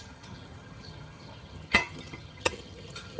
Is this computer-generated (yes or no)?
yes